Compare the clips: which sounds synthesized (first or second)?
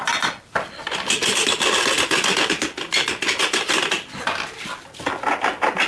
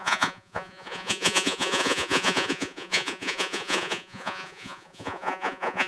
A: second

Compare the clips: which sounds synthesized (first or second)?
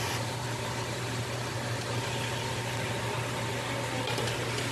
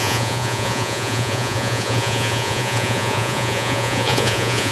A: second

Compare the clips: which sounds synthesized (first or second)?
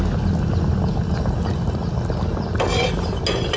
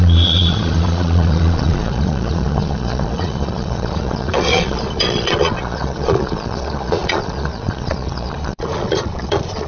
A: second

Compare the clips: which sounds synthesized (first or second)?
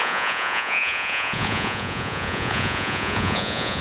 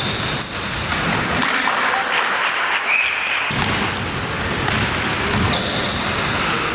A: first